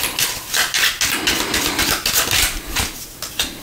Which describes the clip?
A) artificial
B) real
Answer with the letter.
B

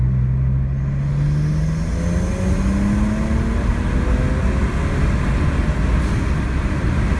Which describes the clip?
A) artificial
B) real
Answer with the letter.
B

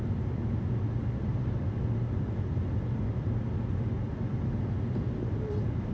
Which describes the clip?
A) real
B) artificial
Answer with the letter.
A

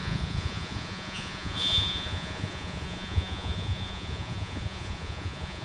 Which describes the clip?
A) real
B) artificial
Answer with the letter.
B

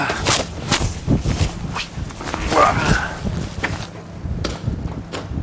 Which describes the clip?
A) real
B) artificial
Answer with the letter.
A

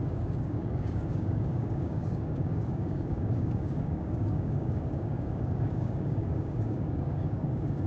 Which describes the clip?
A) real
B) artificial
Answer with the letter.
B